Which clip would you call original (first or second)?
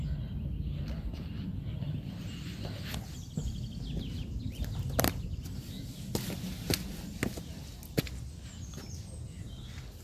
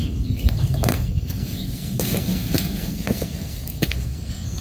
first